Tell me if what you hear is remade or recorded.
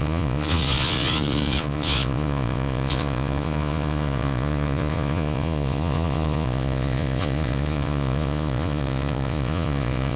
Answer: remade